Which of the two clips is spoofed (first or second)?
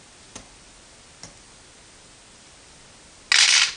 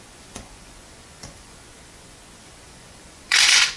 second